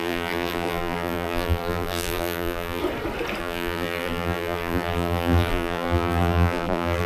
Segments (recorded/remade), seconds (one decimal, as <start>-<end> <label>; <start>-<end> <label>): 0.0-2.8 remade; 2.8-3.4 recorded; 3.4-7.1 remade